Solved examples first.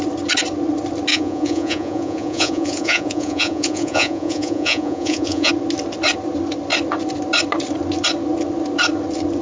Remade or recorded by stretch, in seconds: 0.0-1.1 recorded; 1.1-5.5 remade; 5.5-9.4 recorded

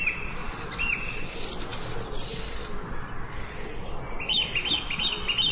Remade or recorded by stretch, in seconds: 0.0-0.4 recorded; 0.4-0.9 remade; 0.9-5.5 recorded

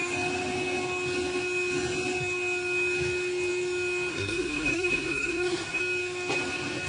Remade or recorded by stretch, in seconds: 0.0-4.1 recorded; 4.1-5.8 remade; 5.8-6.9 recorded

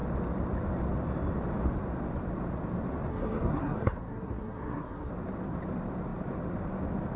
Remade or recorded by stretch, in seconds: 0.0-3.1 recorded; 3.1-5.1 remade; 5.1-7.2 recorded

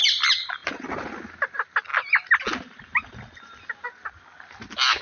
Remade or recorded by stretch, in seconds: 0.0-5.0 recorded